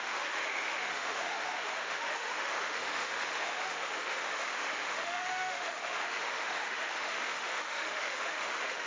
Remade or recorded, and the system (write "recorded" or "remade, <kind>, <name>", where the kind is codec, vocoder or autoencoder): remade, autoencoder, DAC-VAE